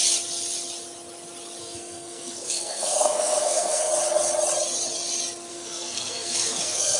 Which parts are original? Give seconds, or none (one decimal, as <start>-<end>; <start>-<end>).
0.0-1.6; 3.9-5.5